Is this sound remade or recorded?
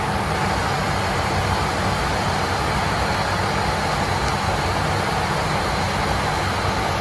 recorded